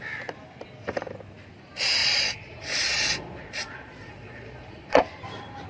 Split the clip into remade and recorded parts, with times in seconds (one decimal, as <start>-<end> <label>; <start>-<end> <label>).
0.0-2.0 recorded; 2.0-5.0 remade; 5.0-5.7 recorded